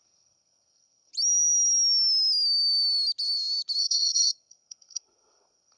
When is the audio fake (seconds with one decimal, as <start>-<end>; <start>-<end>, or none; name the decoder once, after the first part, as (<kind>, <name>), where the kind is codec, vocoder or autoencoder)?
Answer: 0.0-1.1 (codec, SNAC); 3.8-5.8